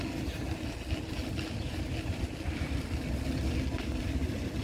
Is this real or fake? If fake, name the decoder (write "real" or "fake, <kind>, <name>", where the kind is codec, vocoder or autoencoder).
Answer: real